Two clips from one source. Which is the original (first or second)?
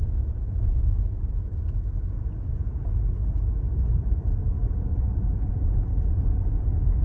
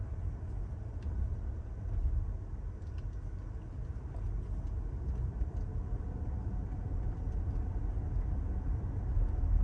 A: second